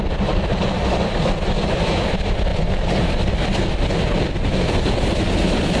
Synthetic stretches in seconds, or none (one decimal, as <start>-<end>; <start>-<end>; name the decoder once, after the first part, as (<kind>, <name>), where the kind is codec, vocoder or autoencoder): 0.0-5.8 (vocoder, BigVGAN v2)